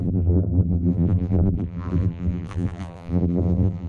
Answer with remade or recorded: remade